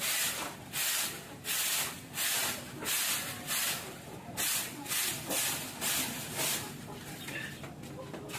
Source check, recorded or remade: recorded